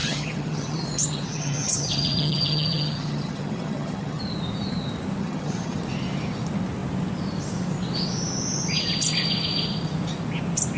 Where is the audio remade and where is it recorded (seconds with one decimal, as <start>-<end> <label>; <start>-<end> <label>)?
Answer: 0.0-4.2 remade; 4.2-5.2 recorded; 5.2-5.8 remade; 5.8-10.8 recorded